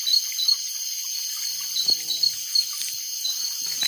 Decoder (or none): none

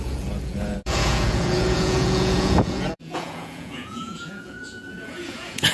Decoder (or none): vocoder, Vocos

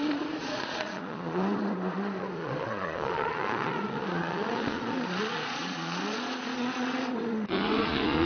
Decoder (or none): vocoder, Vocos